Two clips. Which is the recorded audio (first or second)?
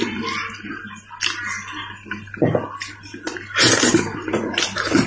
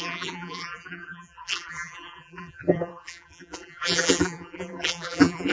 first